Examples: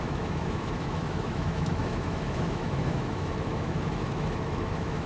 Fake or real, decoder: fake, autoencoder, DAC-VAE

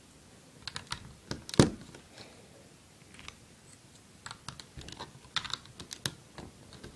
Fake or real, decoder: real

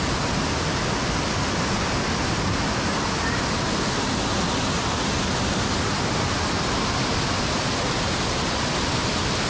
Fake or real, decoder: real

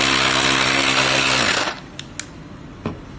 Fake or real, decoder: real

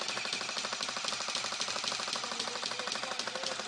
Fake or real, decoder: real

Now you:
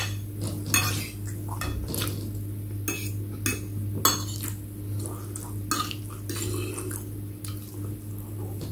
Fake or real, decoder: real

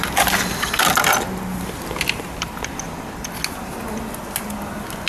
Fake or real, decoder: real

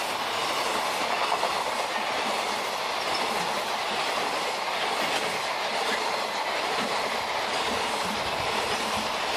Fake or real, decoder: real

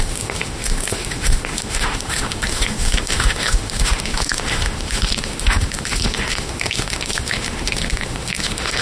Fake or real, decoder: fake, autoencoder, DAC-VAE